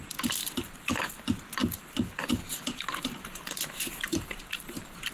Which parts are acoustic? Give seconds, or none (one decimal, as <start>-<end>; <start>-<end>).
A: 0.0-0.4; 1.1-1.6